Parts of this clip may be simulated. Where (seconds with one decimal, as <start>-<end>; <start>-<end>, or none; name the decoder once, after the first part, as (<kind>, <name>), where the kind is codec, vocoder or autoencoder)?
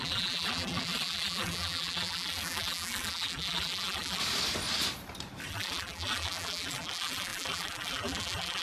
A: 0.0-4.2 (vocoder, BigVGAN v2); 5.5-8.6